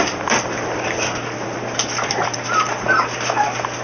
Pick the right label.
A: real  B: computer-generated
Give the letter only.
A